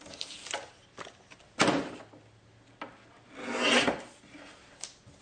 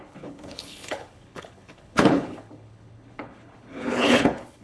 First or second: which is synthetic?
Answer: second